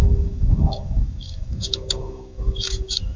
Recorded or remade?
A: remade